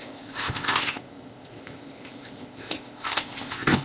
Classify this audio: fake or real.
fake